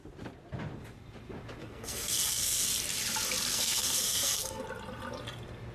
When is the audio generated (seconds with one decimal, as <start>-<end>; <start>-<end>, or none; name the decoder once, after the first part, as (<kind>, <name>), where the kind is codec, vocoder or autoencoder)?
1.6-2.7 (codec, SNAC); 3.5-4.6